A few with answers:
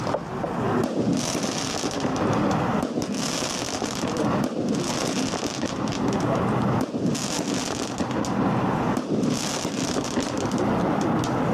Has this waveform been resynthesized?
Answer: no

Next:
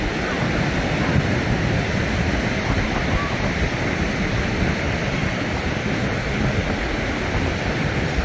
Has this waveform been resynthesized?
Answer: no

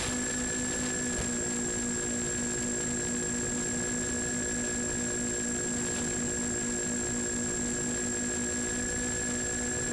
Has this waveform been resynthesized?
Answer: no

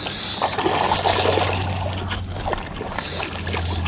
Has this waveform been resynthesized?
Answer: no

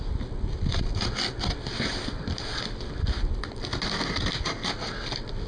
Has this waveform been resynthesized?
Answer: no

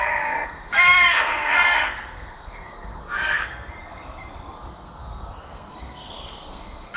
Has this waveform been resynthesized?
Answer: yes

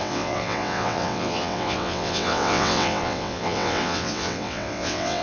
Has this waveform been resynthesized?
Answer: yes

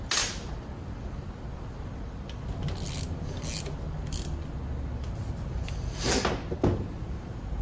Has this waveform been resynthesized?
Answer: no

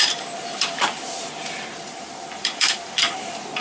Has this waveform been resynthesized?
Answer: yes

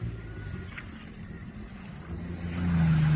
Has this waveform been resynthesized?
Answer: no